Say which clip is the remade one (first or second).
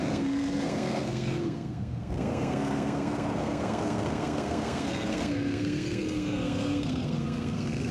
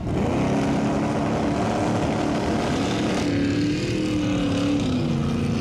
first